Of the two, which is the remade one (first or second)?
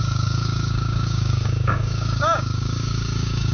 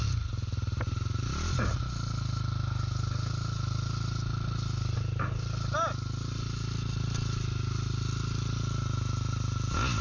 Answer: first